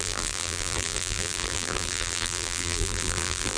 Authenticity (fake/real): fake